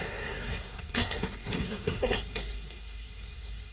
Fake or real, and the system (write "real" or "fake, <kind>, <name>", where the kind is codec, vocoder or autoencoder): fake, codec, SNAC